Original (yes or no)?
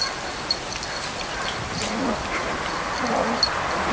yes